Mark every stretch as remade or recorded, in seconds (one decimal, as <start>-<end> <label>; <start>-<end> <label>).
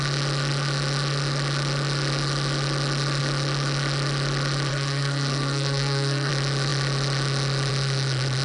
0.0-4.7 recorded; 4.7-6.3 remade; 6.3-8.4 recorded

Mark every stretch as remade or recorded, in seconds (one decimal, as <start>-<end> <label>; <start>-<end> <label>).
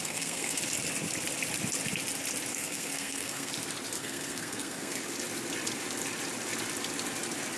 0.0-0.6 remade; 0.6-2.5 recorded; 2.5-3.5 remade; 3.5-4.0 recorded; 4.0-5.0 remade; 5.0-7.6 recorded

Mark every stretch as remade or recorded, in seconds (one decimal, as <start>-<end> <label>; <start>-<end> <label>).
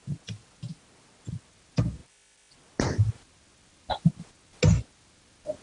0.0-5.6 recorded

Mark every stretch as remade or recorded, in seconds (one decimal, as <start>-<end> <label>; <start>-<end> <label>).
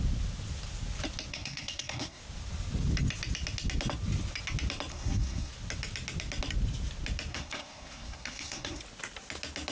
0.0-1.3 recorded; 1.3-2.2 remade; 2.2-4.9 recorded; 4.9-5.5 remade; 5.5-7.3 recorded; 7.3-8.8 remade; 8.8-9.7 recorded